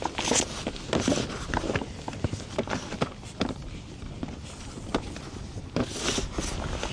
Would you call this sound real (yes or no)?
yes